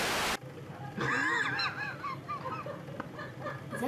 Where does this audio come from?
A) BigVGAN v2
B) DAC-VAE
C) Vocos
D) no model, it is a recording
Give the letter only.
D